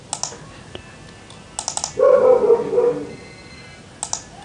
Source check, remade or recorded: recorded